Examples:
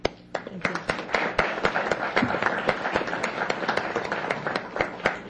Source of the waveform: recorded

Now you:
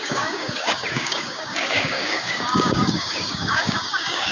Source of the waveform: remade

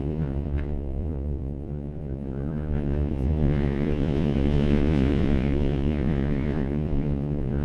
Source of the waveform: remade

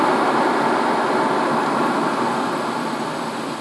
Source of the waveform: recorded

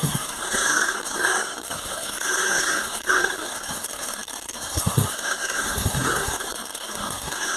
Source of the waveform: remade